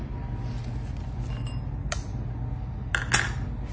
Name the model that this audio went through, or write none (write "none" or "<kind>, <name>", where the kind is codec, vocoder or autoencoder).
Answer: none